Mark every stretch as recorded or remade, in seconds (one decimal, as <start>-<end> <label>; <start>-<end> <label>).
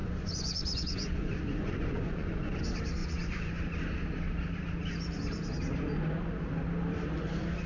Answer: 0.0-2.6 remade; 2.6-3.0 recorded; 3.0-3.5 remade; 3.5-7.7 recorded